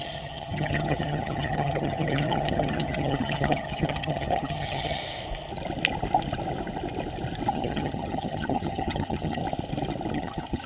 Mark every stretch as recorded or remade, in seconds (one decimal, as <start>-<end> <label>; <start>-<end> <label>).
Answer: 0.0-5.0 remade; 5.0-7.5 recorded; 7.5-9.4 remade; 9.4-10.1 recorded; 10.1-10.7 remade